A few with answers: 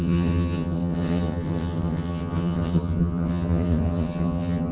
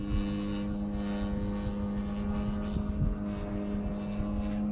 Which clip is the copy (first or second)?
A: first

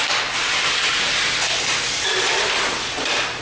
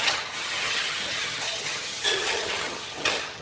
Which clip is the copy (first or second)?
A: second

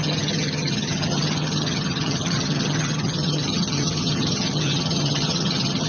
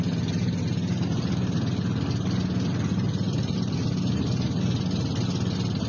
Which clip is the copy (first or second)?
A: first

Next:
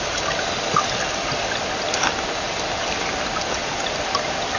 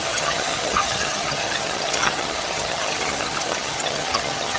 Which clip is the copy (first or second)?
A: second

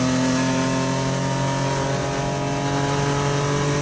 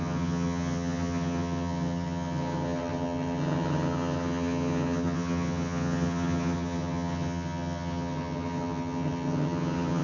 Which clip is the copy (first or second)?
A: second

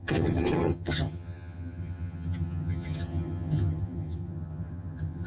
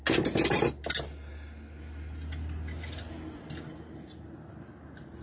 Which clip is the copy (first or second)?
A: first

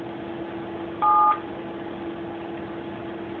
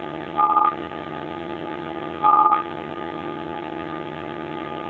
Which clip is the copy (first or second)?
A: second